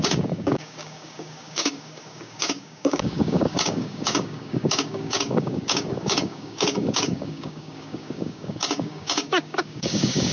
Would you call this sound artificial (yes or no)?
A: yes